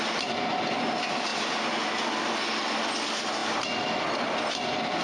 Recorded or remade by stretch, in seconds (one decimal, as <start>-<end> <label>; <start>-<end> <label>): 0.0-5.0 recorded